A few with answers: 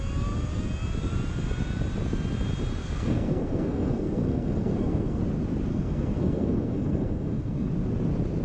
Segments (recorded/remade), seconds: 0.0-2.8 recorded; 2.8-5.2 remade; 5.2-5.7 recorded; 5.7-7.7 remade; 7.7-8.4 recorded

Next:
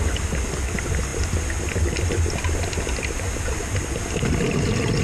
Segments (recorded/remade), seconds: 0.0-5.0 recorded

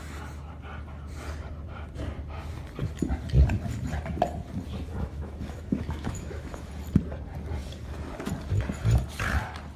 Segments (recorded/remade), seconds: 0.0-4.9 recorded; 4.9-6.7 remade; 6.7-9.8 recorded